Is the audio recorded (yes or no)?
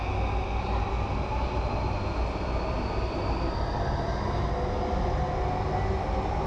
yes